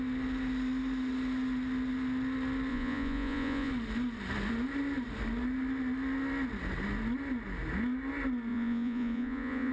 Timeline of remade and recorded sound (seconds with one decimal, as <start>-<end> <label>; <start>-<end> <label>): 0.0-2.7 recorded; 2.7-3.7 remade; 3.7-8.5 recorded; 8.5-9.7 remade